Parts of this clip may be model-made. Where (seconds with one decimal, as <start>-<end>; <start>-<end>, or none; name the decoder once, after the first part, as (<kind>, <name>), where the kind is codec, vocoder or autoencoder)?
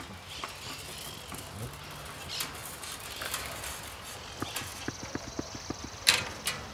2.6-3.6 (vocoder, BigVGAN v2)